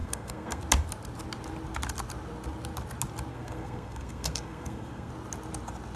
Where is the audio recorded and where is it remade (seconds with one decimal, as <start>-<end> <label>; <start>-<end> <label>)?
0.0-0.6 remade; 0.6-3.3 recorded; 3.3-5.1 remade; 5.1-6.0 recorded